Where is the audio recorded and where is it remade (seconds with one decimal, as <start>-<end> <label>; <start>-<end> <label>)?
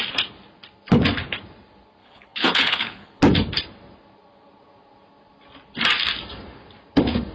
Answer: 0.0-2.0 recorded; 2.0-3.2 remade; 3.2-7.3 recorded